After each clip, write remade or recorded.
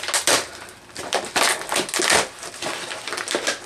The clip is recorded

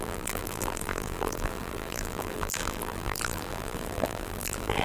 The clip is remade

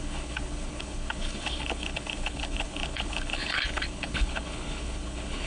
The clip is remade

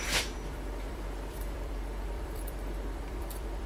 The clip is remade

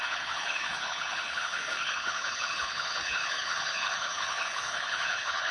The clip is remade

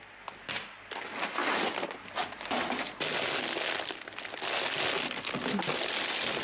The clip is recorded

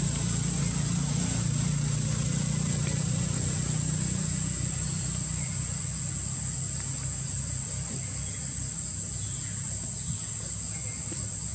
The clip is recorded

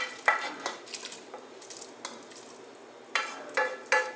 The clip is recorded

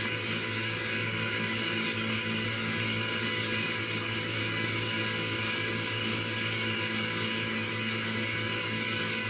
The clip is remade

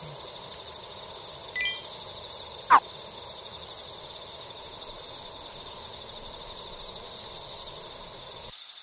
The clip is recorded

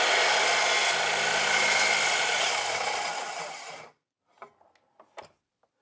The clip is recorded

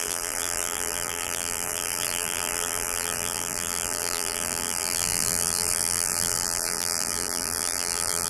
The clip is remade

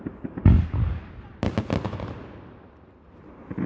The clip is recorded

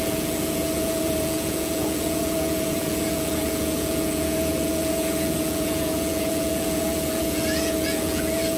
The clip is remade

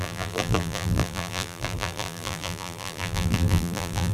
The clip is remade